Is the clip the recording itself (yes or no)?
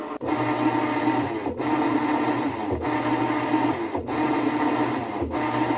yes